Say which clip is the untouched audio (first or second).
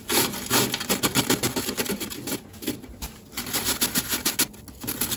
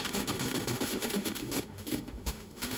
first